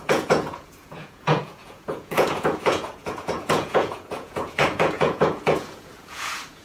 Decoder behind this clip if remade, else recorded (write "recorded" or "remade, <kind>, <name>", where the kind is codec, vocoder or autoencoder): remade, vocoder, Vocos